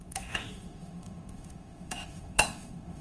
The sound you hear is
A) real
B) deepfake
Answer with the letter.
B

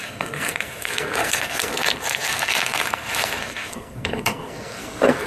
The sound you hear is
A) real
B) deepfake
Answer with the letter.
B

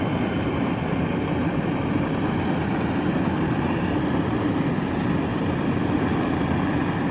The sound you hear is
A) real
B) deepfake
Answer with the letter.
A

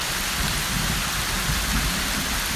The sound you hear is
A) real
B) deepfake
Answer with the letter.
A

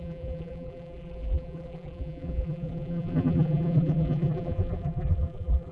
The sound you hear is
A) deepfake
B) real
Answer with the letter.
A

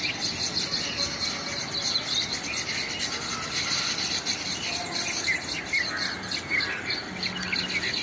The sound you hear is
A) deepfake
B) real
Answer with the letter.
B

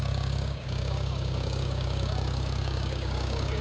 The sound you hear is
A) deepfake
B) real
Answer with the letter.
A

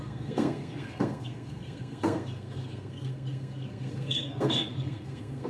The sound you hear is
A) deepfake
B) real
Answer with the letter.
A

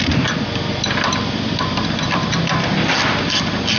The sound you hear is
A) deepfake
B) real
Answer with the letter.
A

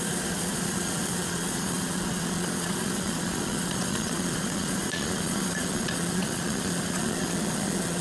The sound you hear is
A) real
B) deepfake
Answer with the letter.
B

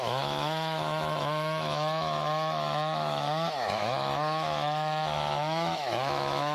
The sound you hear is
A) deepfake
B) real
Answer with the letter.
A